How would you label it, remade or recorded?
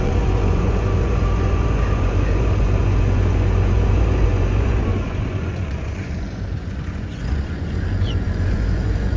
remade